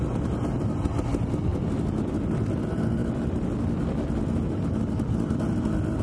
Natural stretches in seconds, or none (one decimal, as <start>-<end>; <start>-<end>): 0.0-6.0